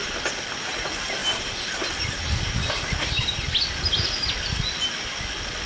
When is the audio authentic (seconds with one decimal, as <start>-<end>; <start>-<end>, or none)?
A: 0.0-5.7